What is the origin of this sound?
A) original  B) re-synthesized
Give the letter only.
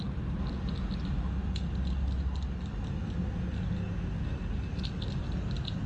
A